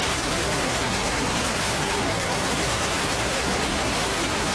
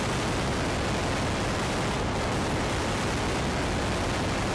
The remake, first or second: first